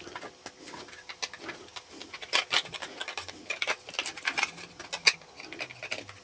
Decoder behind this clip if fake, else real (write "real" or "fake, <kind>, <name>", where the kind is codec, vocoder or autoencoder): real